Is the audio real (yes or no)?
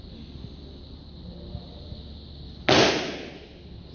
yes